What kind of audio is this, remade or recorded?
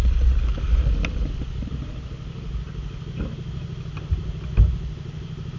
recorded